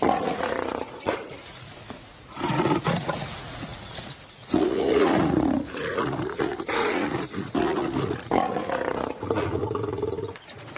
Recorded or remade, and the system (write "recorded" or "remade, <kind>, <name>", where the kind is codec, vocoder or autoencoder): remade, vocoder, Vocos